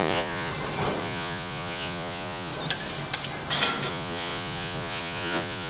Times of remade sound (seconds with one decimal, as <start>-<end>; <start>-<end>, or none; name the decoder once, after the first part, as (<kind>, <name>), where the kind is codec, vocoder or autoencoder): 0.0-0.5 (vocoder, Vocos); 1.0-2.5; 3.9-5.7